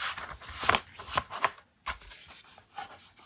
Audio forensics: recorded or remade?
recorded